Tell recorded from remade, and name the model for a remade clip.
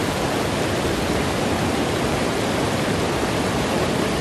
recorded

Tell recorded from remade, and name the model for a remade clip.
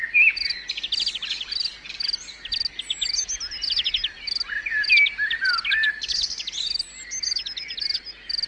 recorded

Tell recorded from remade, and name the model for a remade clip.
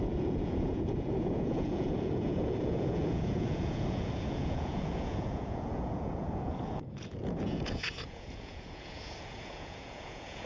remade, vocoder, Vocos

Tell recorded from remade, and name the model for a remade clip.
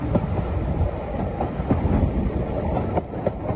recorded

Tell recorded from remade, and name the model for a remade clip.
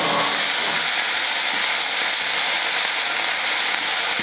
recorded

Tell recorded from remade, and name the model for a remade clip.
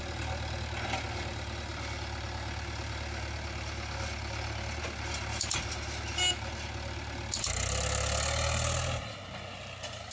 recorded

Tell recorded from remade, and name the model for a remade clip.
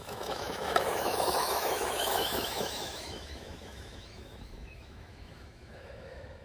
remade, autoencoder, DAC-VAE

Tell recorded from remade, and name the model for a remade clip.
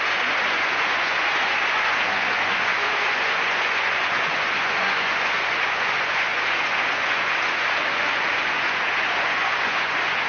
remade, vocoder, Vocos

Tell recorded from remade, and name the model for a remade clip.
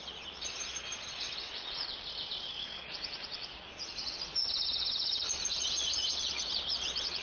remade, vocoder, Vocos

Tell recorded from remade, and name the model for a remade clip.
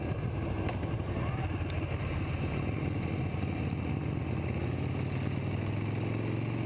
recorded